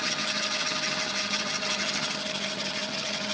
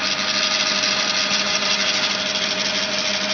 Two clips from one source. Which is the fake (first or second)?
first